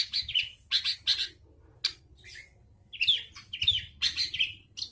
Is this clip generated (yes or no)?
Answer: no